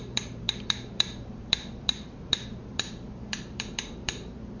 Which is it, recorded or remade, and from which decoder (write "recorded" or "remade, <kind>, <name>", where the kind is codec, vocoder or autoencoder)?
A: remade, vocoder, BigVGAN v2